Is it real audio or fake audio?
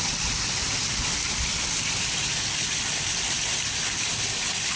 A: fake